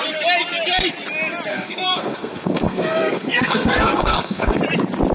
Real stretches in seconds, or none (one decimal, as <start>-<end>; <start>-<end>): 0.0-1.5; 4.6-5.1